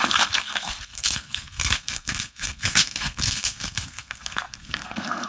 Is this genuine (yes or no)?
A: no